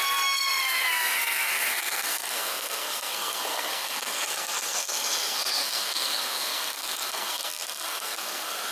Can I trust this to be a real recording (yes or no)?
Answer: no